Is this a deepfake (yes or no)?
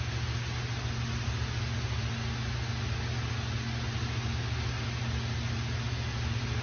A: no